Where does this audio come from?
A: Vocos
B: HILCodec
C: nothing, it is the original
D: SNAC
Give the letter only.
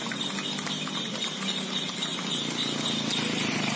C